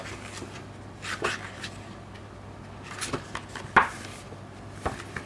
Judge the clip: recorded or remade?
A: recorded